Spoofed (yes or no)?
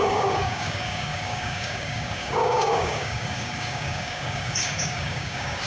yes